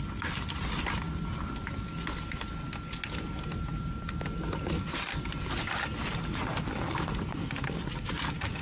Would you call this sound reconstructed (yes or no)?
no